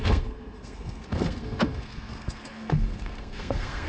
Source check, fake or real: fake